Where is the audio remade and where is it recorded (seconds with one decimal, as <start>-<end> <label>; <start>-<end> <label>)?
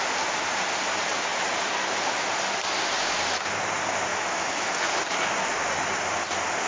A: 0.0-4.1 recorded; 4.1-4.7 remade; 4.7-6.7 recorded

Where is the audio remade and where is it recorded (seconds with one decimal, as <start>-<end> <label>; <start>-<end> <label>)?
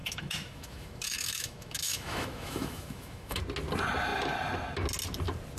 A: 0.0-3.4 remade; 3.4-5.6 recorded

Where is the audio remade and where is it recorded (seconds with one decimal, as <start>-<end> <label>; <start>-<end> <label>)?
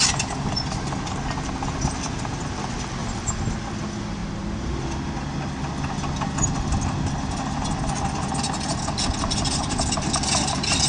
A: 0.0-10.9 recorded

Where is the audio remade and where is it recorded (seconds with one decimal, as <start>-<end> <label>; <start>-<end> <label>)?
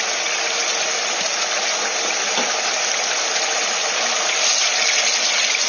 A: 0.0-5.7 recorded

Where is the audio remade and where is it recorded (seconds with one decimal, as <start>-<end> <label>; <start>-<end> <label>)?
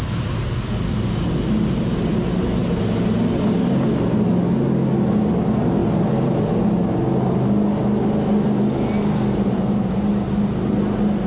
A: 0.0-11.3 recorded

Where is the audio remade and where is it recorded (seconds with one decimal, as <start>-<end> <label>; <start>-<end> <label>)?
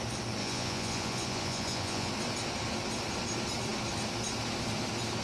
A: 0.0-0.4 recorded; 0.4-2.1 remade; 2.1-5.2 recorded